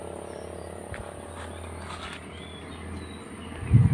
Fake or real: real